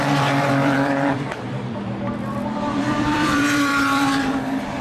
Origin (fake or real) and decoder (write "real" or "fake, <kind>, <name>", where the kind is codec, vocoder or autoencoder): fake, vocoder, BigVGAN v2